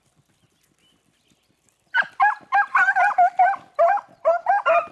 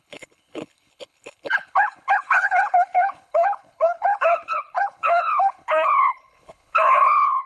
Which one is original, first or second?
first